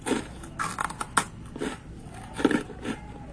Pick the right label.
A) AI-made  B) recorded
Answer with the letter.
B